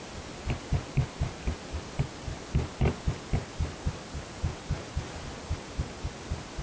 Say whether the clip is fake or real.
real